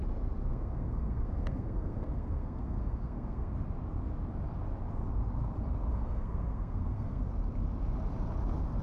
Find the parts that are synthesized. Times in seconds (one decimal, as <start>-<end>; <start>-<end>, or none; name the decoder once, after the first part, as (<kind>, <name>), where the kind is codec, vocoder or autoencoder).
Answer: 0.5-3.5 (codec, SNAC); 5.9-7.2